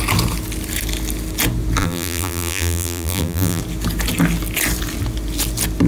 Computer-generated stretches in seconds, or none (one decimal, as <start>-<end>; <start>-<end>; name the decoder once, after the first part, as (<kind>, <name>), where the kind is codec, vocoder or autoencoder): 1.8-3.6 (vocoder, BigVGAN v2)